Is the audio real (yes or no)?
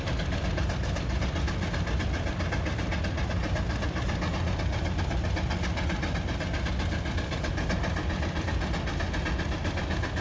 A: yes